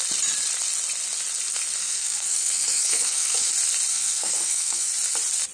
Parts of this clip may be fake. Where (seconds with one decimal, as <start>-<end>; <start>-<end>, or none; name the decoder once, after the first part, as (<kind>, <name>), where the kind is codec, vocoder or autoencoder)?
1.8-3.5 (codec, SNAC); 3.9-4.9